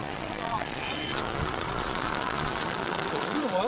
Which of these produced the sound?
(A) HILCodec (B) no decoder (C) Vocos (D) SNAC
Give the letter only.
C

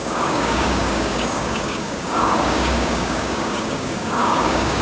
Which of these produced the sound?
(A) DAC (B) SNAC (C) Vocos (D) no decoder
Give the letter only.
A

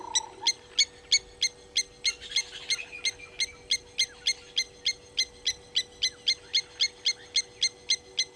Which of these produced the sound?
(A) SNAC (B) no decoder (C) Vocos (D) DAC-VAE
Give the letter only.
B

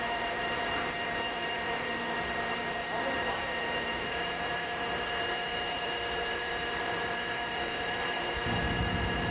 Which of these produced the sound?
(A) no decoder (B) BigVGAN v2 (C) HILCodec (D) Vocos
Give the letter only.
B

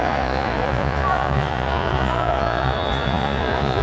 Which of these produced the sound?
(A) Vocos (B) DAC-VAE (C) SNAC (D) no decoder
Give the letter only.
A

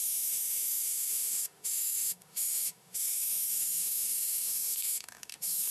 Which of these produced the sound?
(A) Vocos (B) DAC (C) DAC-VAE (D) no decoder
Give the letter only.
C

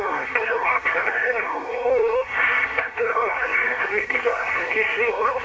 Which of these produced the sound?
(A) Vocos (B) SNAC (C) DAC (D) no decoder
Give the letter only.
B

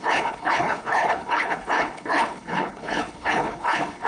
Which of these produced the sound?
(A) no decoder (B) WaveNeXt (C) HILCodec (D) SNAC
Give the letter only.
C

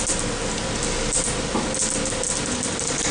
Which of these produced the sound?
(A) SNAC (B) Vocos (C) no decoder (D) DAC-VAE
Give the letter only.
C